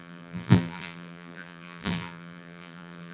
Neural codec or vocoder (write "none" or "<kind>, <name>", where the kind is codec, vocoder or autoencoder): vocoder, BigVGAN v2